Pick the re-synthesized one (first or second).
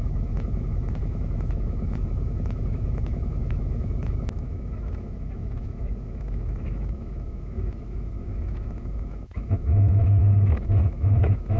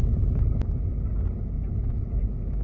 first